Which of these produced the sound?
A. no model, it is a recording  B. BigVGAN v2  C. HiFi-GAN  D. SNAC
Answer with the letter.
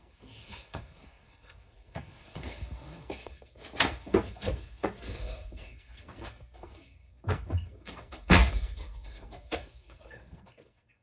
D